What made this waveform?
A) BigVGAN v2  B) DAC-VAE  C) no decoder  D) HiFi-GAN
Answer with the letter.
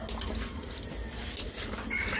C